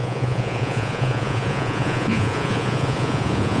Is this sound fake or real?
fake